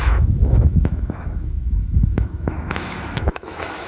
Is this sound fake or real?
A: fake